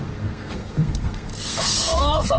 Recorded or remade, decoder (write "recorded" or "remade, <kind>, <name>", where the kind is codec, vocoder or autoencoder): remade, codec, SNAC